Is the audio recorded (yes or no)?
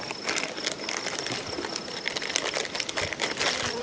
yes